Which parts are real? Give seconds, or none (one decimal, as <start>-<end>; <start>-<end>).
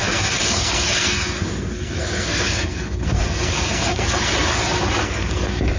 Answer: 4.3-5.0